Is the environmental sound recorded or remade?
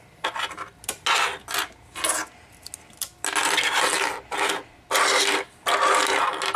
recorded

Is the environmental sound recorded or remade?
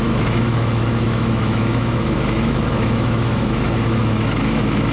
remade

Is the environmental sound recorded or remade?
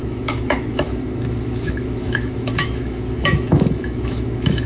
remade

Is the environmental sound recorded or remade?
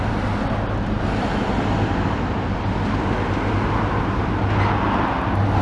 recorded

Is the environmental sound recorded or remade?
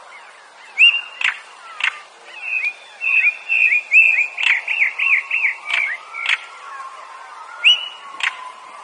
recorded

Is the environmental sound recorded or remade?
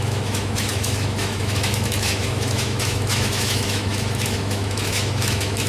remade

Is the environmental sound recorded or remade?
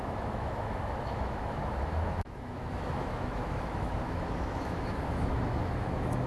remade